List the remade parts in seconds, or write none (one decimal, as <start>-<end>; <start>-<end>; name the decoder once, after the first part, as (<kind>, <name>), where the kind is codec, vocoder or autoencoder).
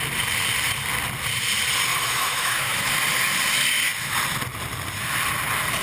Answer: 1.9-2.9 (autoencoder, DAC-VAE)